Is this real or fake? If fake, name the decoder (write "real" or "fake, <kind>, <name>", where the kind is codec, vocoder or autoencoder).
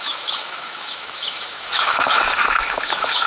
fake, autoencoder, DAC-VAE